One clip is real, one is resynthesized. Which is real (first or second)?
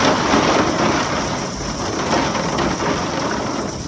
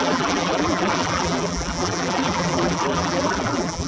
first